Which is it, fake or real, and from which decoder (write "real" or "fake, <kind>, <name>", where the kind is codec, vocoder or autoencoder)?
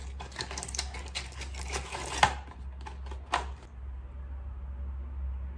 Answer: real